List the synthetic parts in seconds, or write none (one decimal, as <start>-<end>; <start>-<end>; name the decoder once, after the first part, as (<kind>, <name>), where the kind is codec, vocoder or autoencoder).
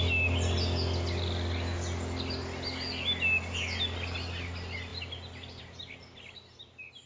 none